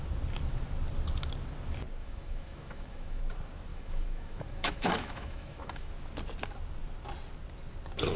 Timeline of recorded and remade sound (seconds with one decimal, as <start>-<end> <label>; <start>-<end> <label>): 0.0-2.0 recorded; 2.0-3.2 remade; 3.2-3.7 recorded; 3.7-5.9 remade; 5.9-8.2 recorded